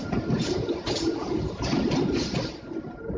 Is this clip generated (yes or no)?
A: no